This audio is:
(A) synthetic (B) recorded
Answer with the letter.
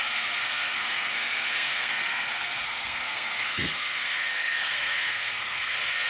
A